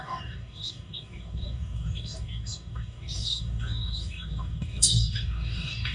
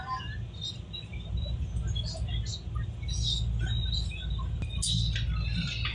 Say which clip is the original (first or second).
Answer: second